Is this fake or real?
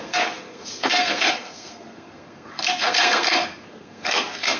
fake